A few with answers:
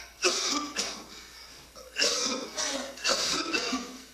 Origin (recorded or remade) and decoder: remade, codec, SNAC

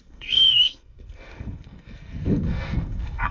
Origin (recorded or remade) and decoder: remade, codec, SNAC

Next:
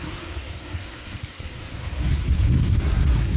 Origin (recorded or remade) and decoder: remade, codec, SNAC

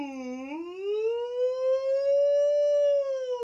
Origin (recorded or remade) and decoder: recorded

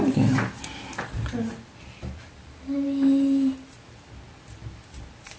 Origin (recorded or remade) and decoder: recorded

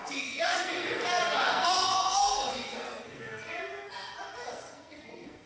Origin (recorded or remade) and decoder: remade, codec, SNAC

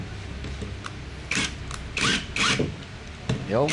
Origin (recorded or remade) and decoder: recorded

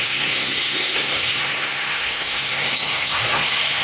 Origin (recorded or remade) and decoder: remade, codec, SNAC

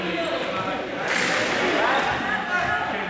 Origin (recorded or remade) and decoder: recorded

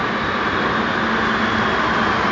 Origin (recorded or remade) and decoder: recorded